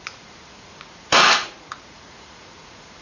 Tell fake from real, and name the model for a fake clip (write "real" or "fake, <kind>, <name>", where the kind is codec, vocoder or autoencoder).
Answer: fake, vocoder, Vocos